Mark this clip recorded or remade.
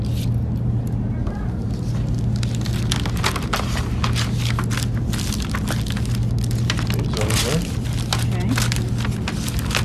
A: recorded